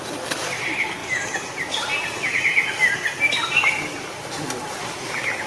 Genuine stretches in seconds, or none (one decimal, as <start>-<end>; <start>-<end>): 0.0-5.5